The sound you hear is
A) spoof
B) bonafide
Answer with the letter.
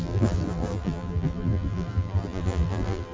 A